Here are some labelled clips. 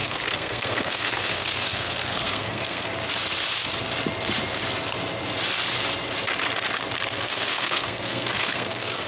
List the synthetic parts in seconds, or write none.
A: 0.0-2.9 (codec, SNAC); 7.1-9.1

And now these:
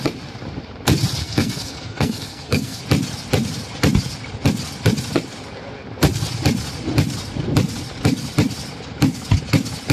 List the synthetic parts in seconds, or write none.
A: 1.2-2.8 (codec, SNAC)

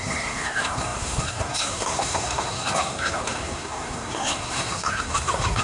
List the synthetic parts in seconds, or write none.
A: 0.0-5.6 (codec, SNAC)

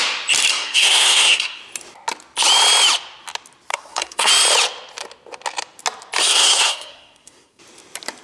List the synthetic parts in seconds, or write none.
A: 0.5-1.6 (codec, SNAC); 3.7-4.3; 6.3-7.6

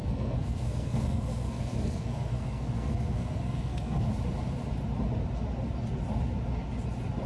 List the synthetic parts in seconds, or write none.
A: 0.0-4.1 (codec, SNAC)

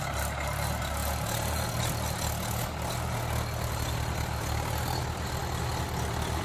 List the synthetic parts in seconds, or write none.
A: none